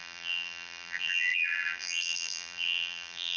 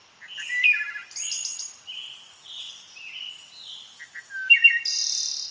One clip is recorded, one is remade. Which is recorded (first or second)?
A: second